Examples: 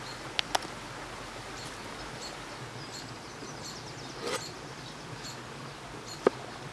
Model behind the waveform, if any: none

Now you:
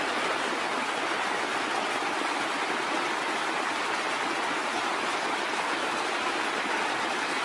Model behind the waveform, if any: none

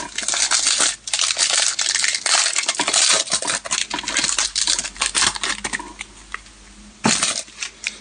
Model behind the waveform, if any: none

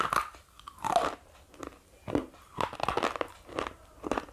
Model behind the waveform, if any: none